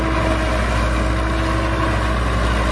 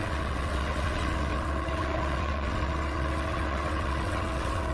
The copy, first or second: second